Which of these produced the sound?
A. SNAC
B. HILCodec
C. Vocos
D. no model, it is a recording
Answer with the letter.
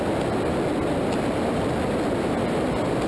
D